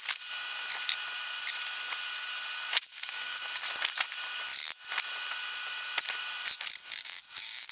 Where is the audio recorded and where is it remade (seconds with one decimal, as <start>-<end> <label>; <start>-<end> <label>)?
0.0-2.7 recorded; 2.7-3.4 remade; 3.4-6.8 recorded; 6.8-7.7 remade

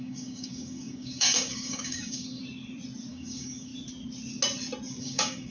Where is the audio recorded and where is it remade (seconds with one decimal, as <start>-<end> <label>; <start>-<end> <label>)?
0.0-2.4 remade; 2.4-3.1 recorded; 3.1-3.7 remade; 3.7-5.0 recorded; 5.0-5.5 remade

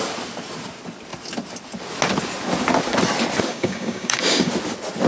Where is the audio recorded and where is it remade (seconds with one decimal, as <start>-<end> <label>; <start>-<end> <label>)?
0.0-3.5 recorded; 3.5-4.5 remade; 4.5-5.1 recorded

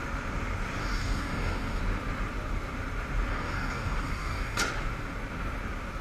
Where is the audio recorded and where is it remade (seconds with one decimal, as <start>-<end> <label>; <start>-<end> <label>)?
0.0-0.8 recorded; 0.8-1.8 remade; 1.8-3.3 recorded; 3.3-4.6 remade; 4.6-6.0 recorded

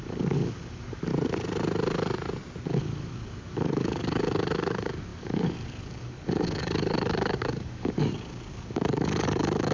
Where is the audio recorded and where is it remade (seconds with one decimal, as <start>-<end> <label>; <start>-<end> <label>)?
0.0-1.1 remade; 1.1-2.7 recorded; 2.7-9.7 remade

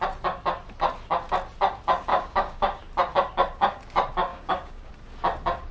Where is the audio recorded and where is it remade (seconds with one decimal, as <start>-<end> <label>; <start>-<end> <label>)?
0.0-2.1 recorded; 2.1-2.8 remade; 2.8-4.3 recorded; 4.3-4.9 remade; 4.9-5.7 recorded